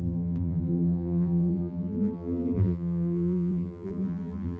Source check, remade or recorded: remade